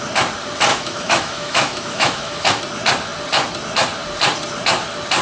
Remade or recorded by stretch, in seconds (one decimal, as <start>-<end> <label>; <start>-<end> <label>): 0.0-0.7 recorded; 0.7-2.6 remade; 2.6-5.2 recorded